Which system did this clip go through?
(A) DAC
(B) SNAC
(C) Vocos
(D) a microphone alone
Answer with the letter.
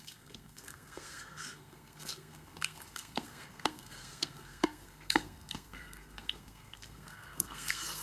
B